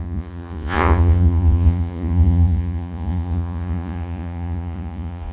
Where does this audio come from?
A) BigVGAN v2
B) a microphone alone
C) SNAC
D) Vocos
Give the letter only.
D